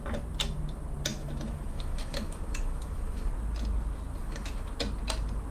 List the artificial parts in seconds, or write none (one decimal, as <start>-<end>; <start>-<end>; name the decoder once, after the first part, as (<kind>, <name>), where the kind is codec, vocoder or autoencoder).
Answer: 1.1-3.3 (autoencoder, DAC-VAE); 4.2-4.7